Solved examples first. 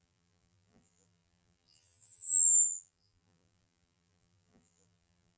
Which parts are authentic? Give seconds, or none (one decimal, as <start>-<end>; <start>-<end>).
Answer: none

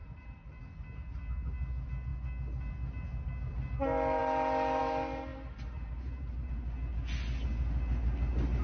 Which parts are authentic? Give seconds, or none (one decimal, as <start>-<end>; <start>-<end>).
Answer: 0.6-5.3; 6.5-8.6

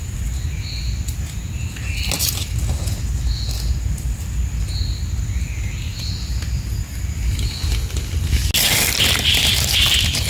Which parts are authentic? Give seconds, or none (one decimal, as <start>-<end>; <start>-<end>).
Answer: 0.0-10.3

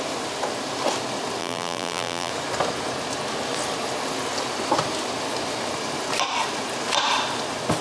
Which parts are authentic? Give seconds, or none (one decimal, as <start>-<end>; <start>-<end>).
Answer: 0.0-1.4; 2.3-7.8

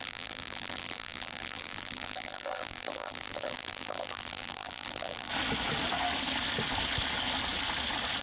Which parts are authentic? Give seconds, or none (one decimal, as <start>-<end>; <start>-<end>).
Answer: 5.3-8.2

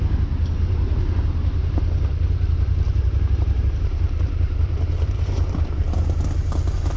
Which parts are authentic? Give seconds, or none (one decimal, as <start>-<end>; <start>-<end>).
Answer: 0.0-1.6; 5.8-7.0

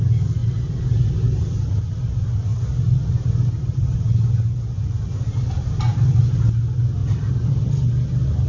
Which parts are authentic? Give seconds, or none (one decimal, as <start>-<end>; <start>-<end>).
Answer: 0.0-7.0; 7.6-8.5

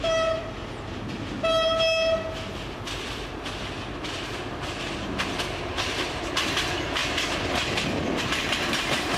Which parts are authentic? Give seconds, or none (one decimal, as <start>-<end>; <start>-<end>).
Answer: 0.6-4.8; 7.0-8.2